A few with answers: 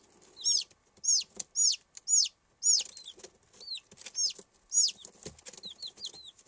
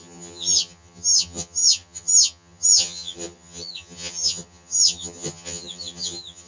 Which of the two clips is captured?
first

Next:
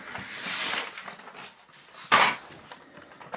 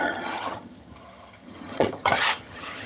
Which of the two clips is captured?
first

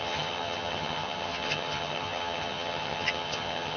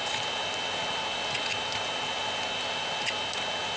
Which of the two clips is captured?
second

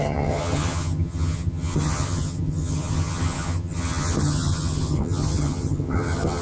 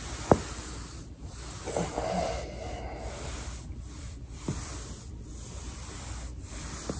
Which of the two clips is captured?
second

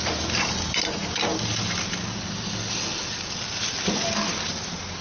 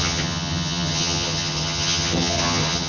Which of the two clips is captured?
first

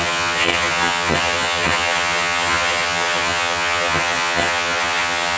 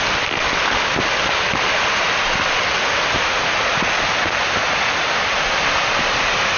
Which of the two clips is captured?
second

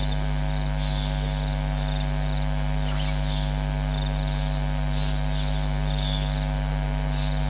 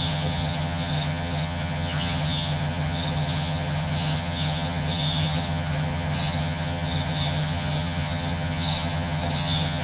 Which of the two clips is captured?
first